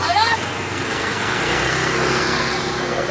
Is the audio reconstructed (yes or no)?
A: yes